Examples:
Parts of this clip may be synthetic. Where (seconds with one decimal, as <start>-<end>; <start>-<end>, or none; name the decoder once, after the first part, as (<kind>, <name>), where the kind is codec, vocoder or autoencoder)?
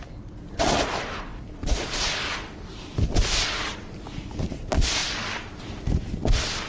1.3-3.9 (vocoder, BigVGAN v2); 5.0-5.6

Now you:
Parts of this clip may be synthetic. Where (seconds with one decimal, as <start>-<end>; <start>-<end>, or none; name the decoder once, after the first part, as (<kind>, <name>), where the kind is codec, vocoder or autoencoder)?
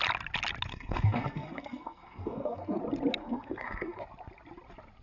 0.7-2.8 (codec, SNAC); 3.2-4.0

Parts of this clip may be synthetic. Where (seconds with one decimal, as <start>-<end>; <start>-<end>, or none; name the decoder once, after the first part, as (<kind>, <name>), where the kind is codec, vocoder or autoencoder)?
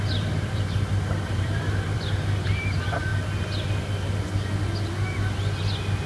0.0-3.1 (vocoder, BigVGAN v2)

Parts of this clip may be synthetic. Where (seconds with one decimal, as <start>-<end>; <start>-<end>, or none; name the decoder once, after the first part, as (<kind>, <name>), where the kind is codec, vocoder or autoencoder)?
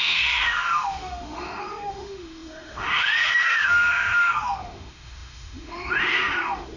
0.0-6.8 (autoencoder, DAC-VAE)